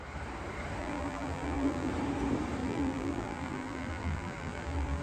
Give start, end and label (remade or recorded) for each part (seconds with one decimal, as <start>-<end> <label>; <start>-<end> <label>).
0.0-0.8 recorded; 0.8-1.9 remade; 1.9-2.6 recorded; 2.6-5.0 remade

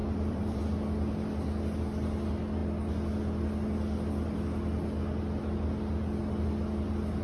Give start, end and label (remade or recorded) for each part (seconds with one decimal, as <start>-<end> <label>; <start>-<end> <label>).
0.0-0.6 remade; 0.6-7.2 recorded

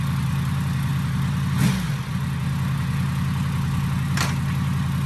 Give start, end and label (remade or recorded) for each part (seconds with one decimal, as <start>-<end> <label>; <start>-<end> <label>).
0.0-5.1 recorded

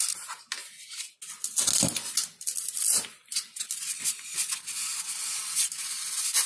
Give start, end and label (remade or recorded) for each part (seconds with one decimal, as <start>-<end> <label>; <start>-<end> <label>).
0.0-6.5 recorded

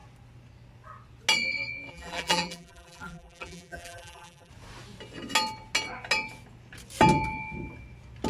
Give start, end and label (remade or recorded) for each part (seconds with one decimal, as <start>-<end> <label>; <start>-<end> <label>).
0.0-1.9 recorded; 1.9-4.5 remade; 4.5-8.3 recorded

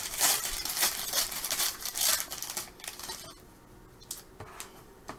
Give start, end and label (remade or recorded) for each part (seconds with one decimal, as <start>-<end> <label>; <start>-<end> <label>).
0.0-2.1 remade; 2.1-4.8 recorded; 4.8-5.2 remade